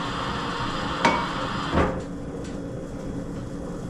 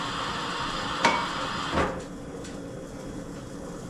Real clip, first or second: first